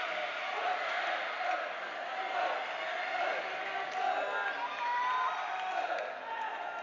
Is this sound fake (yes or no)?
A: no